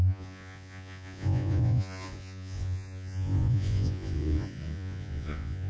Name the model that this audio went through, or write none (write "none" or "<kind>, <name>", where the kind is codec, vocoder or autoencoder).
vocoder, Vocos